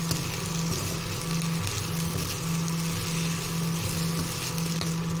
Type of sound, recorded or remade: recorded